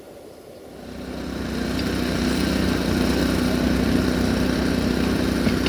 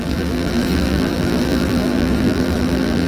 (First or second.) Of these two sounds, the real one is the first